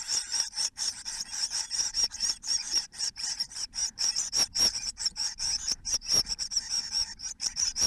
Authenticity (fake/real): fake